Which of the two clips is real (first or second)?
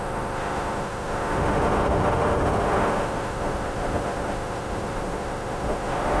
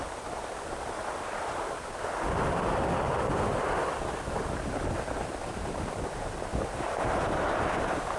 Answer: second